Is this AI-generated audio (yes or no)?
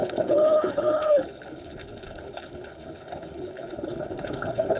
yes